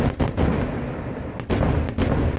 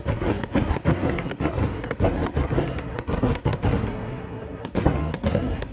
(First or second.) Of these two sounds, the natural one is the first